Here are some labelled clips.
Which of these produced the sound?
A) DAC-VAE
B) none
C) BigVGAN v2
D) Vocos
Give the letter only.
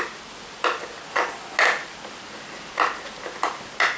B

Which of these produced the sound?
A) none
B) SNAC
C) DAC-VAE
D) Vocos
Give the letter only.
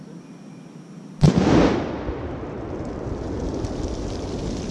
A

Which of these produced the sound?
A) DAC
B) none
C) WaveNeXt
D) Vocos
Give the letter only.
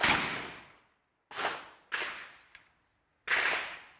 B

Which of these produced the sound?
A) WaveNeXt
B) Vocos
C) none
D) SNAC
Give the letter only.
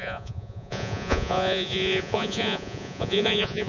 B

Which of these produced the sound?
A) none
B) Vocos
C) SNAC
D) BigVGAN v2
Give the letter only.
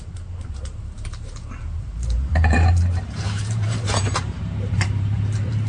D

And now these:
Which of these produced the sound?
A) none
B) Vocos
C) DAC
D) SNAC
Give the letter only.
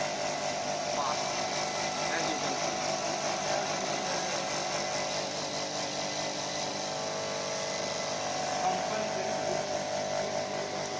A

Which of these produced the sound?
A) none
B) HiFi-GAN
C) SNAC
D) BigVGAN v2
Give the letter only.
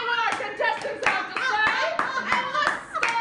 A